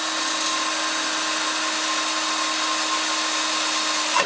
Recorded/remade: recorded